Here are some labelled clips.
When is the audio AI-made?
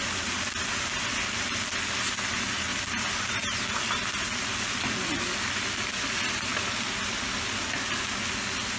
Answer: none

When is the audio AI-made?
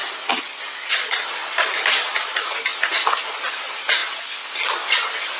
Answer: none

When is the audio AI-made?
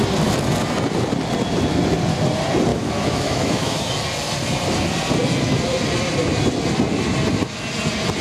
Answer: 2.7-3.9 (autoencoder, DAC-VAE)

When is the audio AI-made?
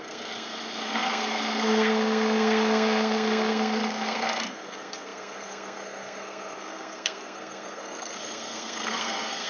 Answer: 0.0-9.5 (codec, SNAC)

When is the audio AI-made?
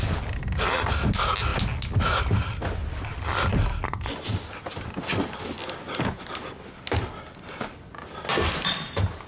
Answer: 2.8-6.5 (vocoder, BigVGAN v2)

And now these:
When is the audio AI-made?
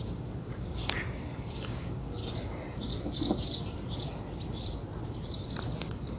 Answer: 0.0-0.8 (codec, DAC); 1.5-2.2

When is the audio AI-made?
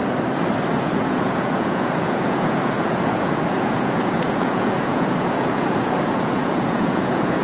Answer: 0.8-7.4 (vocoder, Vocos)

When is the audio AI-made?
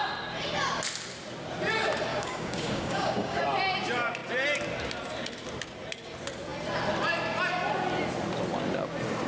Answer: 2.1-3.4 (codec, DAC)